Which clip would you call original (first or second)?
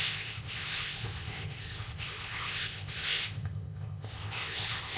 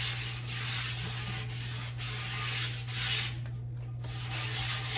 second